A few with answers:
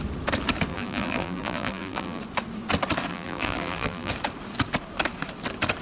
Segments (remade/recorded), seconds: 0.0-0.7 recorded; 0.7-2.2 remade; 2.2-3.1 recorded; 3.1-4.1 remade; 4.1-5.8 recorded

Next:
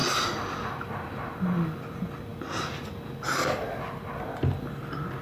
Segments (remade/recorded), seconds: 0.0-0.6 remade; 0.6-5.2 recorded

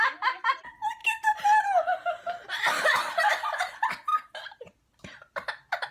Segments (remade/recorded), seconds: 0.0-5.9 recorded

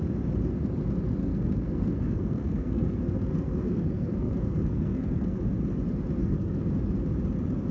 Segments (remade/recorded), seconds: 0.0-1.2 recorded; 1.2-5.4 remade; 5.4-6.2 recorded; 6.2-6.7 remade; 6.7-7.7 recorded

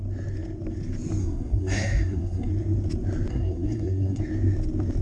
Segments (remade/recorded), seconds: 0.0-1.2 recorded; 1.2-2.5 remade; 2.5-3.3 recorded; 3.3-4.2 remade; 4.2-5.0 recorded

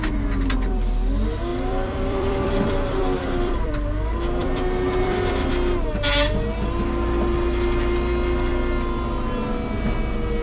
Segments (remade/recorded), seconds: 0.0-1.5 recorded; 1.5-3.7 remade; 3.7-4.4 recorded; 4.4-5.5 remade; 5.5-10.4 recorded

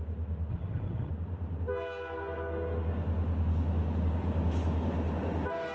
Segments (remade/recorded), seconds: 0.0-0.5 recorded; 0.5-1.1 remade; 1.1-5.7 recorded

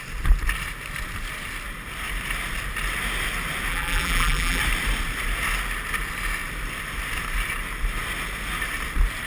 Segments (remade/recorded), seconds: 0.0-3.7 recorded; 3.7-4.6 remade; 4.6-9.3 recorded